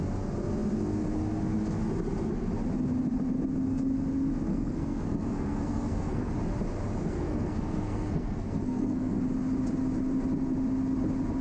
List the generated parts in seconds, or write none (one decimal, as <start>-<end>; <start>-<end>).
4.5-6.3; 7.0-9.2